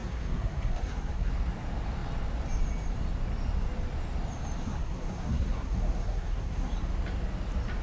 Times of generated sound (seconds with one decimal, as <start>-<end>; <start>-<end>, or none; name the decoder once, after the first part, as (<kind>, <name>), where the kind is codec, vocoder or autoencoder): 0.0-1.3 (codec, SNAC); 4.6-6.7

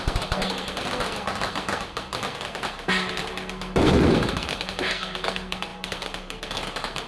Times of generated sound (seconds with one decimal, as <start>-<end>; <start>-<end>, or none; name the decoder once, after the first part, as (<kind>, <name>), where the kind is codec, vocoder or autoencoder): 0.0-7.1 (codec, SNAC)

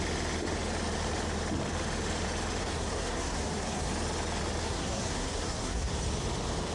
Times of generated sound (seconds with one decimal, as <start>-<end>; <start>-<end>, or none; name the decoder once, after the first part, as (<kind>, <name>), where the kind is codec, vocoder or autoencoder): 2.6-3.9 (codec, SNAC); 4.6-5.9

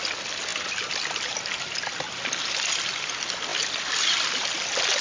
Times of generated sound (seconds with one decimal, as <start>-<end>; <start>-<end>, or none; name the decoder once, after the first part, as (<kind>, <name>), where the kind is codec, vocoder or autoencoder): none